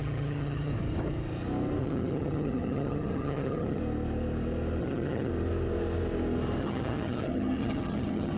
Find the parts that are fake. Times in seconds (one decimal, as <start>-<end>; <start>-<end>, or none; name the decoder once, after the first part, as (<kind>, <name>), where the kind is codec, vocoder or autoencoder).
0.0-0.7 (vocoder, HiFi-GAN); 1.8-3.8; 4.8-5.3; 6.6-8.4